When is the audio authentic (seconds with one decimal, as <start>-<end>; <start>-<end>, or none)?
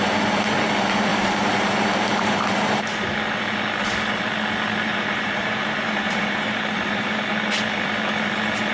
0.0-1.1; 3.4-4.9; 7.2-8.7